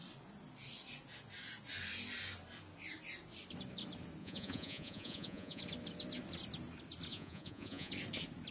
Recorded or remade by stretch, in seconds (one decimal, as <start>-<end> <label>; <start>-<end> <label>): 0.0-4.2 recorded; 4.2-5.6 remade; 5.6-7.1 recorded; 7.1-7.9 remade; 7.9-8.5 recorded